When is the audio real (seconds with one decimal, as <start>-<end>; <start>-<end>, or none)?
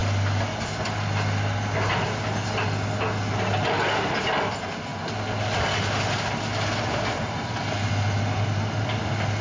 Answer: 0.0-9.4